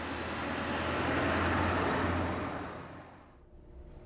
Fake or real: real